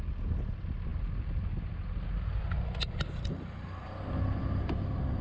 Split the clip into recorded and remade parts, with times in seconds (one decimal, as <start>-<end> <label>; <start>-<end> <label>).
0.0-5.2 recorded